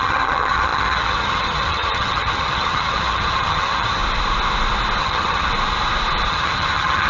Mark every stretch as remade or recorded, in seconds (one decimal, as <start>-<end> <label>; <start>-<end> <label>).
0.0-4.0 remade; 4.0-5.0 recorded; 5.0-5.5 remade; 5.5-6.3 recorded; 6.3-7.1 remade